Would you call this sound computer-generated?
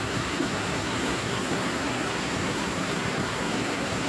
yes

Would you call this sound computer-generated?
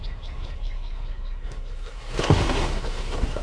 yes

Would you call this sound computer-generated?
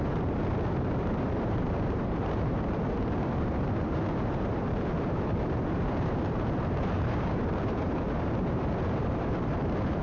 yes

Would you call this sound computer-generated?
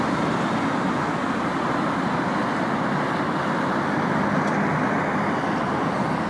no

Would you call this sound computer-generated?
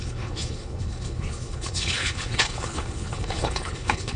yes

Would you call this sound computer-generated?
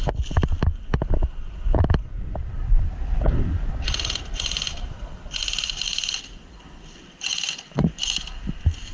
no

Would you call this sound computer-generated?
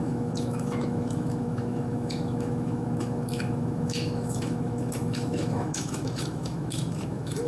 yes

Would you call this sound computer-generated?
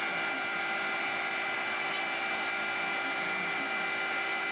no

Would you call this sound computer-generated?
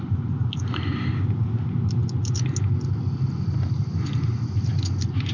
no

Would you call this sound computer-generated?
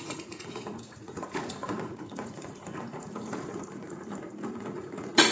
yes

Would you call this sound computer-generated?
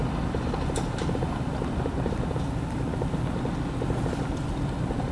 no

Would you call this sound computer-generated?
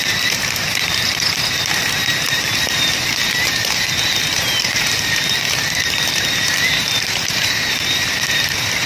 yes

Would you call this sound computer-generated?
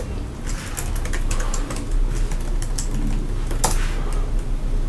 no